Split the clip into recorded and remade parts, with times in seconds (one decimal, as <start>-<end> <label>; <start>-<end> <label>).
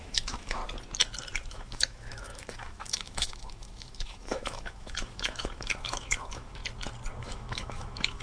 0.0-0.6 remade; 0.6-1.5 recorded; 1.5-6.6 remade; 6.6-7.2 recorded; 7.2-8.2 remade